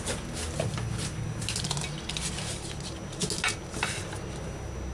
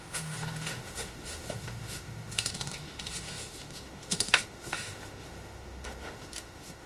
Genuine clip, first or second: first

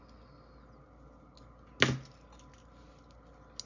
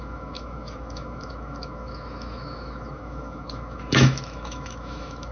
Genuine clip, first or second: first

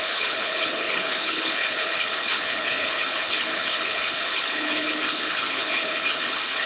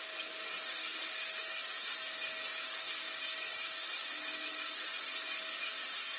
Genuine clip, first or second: second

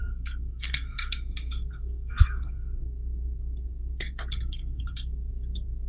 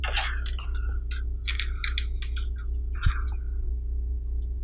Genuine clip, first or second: second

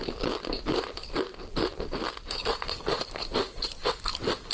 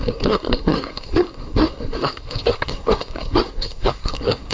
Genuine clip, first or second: first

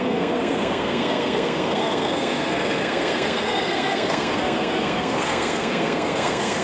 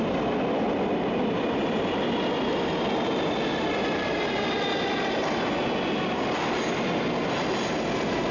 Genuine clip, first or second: second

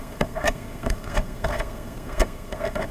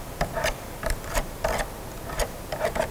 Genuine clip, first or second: second